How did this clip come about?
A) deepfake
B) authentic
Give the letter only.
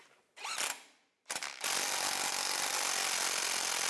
B